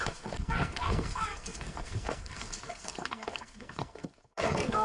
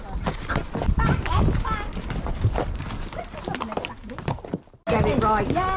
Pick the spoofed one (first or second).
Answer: first